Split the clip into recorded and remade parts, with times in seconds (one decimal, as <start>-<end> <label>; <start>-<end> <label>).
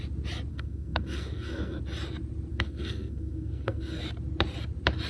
0.0-0.5 recorded; 0.5-1.8 remade; 1.8-2.5 recorded; 2.5-4.0 remade; 4.0-5.1 recorded